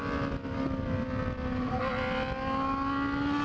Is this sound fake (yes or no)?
no